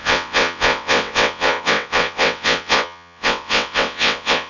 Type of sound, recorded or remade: remade